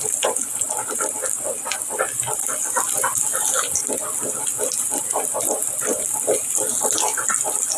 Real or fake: real